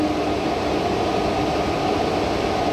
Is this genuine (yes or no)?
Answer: yes